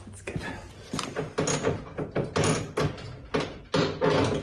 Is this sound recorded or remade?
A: recorded